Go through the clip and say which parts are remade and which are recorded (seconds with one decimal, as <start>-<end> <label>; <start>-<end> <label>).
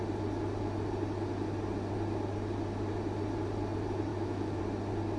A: 0.0-4.1 recorded; 4.1-4.6 remade; 4.6-5.2 recorded